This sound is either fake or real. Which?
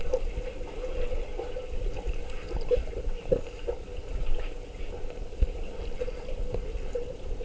real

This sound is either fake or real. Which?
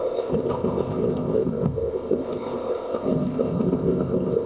fake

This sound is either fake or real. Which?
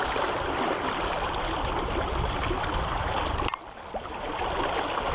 real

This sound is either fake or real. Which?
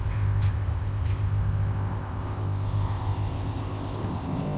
fake